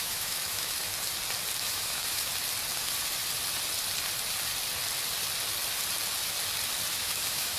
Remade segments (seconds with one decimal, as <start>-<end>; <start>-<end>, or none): 0.0-0.9; 1.6-2.3; 6.9-7.6